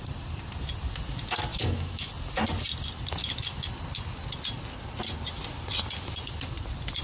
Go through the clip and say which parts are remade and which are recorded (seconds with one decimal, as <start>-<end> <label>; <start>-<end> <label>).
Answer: 0.0-1.5 recorded; 1.5-2.1 remade; 2.1-3.2 recorded; 3.2-3.7 remade; 3.7-7.0 recorded